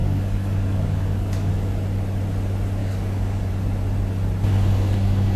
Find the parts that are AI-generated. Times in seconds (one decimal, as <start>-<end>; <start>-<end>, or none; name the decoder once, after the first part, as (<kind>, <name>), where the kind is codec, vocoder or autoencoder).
0.0-1.5 (codec, DAC); 2.8-3.5; 4.5-5.4